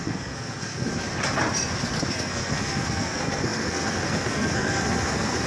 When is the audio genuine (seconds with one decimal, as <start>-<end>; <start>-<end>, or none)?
0.9-2.1